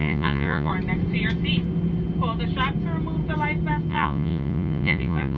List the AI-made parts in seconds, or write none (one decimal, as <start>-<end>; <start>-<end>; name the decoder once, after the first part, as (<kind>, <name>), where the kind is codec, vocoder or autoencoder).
0.0-0.7 (vocoder, Vocos); 3.9-5.4

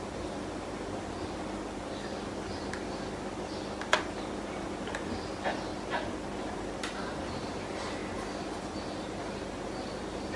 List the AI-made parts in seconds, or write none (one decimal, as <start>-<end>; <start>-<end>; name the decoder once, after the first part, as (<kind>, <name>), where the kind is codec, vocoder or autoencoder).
none

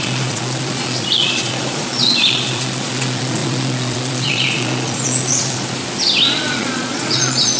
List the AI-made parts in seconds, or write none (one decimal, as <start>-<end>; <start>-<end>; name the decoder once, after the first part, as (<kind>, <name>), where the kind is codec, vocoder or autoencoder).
0.0-5.8 (vocoder, Vocos); 6.3-7.6

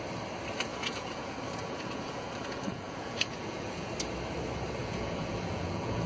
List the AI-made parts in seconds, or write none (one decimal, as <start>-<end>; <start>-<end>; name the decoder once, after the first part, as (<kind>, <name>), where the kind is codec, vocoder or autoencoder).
0.7-3.9 (vocoder, Vocos); 4.8-6.1

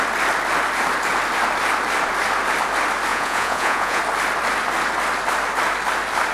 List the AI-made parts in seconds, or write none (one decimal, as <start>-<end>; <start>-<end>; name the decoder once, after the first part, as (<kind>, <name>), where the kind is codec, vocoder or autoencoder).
3.1-4.0 (vocoder, Vocos)

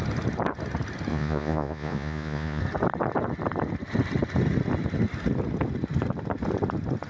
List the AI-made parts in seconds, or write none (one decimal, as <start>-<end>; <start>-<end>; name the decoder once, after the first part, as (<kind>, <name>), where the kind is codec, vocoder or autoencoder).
1.1-2.6 (vocoder, Vocos)

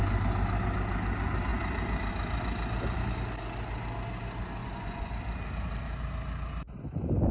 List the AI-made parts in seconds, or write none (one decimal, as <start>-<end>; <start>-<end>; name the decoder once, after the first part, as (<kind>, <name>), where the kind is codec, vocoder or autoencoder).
4.6-5.1 (vocoder, Vocos)